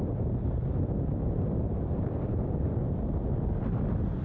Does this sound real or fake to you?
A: real